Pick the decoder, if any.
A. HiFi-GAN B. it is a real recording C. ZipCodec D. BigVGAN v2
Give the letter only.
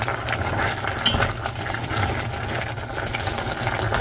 B